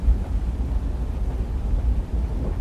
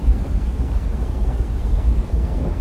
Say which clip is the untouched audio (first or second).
first